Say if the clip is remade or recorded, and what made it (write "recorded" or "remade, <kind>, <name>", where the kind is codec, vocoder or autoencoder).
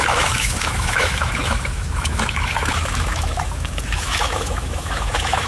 remade, autoencoder, DAC-VAE